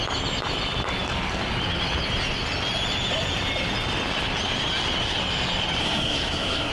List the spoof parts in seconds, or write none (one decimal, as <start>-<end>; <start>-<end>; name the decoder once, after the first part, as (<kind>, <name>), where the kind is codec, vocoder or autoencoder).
5.8-6.7 (codec, SNAC)